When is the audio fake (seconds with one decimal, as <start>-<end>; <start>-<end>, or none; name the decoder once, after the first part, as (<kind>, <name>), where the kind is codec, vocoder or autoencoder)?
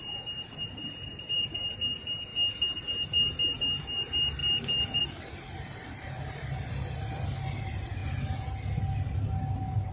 0.0-2.3 (vocoder, BigVGAN v2); 3.6-8.0; 8.9-9.9